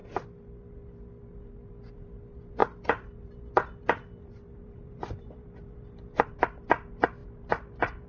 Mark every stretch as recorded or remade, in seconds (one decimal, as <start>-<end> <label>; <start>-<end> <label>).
0.0-2.6 recorded; 2.6-6.4 remade; 6.4-8.1 recorded